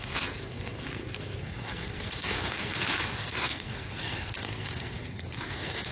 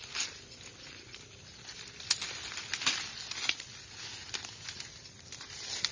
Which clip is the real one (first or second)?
second